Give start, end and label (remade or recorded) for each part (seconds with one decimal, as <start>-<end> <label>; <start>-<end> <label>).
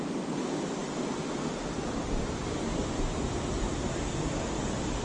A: 0.0-5.0 recorded